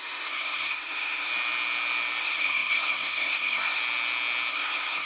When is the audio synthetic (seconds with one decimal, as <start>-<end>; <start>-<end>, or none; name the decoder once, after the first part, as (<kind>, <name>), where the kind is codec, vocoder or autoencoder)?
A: 0.0-1.3 (codec, SNAC); 2.2-3.8; 4.5-5.1